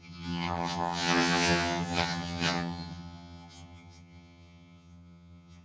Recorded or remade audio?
remade